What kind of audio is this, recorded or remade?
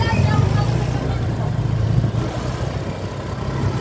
recorded